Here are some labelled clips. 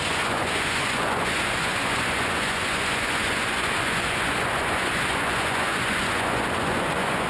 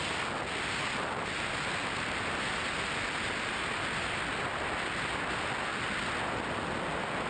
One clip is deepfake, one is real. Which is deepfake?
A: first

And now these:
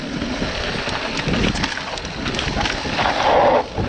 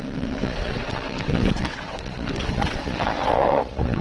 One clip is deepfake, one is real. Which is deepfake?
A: second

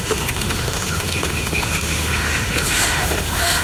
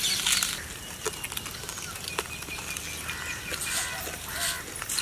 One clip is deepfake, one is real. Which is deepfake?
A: first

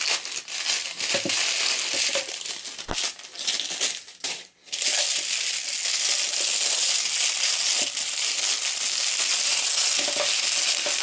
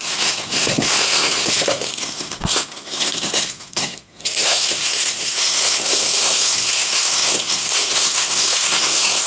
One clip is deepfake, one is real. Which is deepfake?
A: second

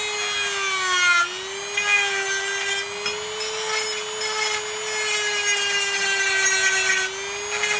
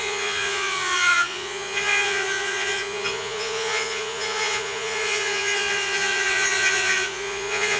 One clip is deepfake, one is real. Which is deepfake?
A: second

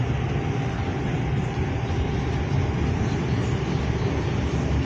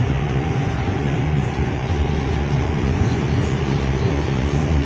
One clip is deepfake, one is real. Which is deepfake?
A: second